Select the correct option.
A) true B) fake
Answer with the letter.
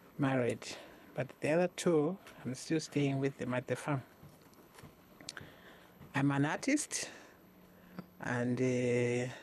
B